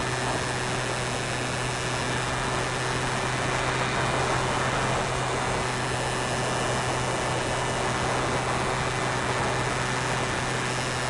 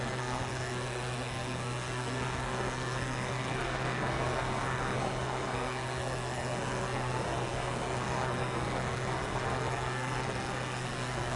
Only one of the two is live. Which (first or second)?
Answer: first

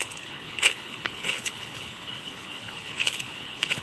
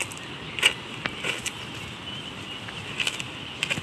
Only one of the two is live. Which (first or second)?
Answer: second